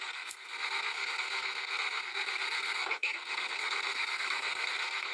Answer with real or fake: fake